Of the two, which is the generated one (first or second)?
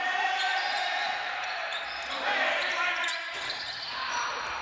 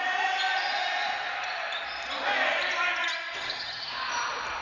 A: first